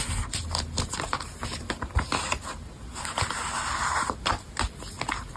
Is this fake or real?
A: real